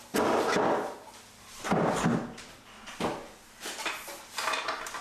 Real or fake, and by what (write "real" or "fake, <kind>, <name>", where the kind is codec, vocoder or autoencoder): real